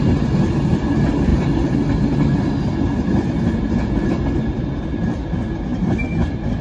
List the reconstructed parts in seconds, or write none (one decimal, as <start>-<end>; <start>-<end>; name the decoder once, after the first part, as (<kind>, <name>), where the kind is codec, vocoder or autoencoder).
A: none